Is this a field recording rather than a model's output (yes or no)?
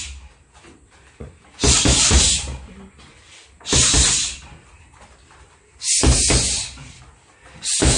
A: yes